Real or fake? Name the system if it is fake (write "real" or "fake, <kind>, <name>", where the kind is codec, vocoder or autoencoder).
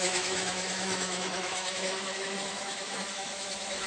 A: fake, autoencoder, DAC-VAE